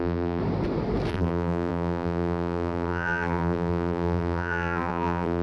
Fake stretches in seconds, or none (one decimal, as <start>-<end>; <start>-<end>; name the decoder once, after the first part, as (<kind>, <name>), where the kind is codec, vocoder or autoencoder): 0.0-0.4 (vocoder, BigVGAN v2); 1.1-5.4